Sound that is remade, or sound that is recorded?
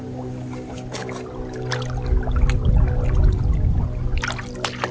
recorded